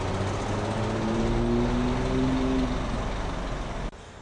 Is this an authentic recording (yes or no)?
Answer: yes